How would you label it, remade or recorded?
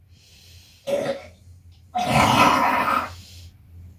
recorded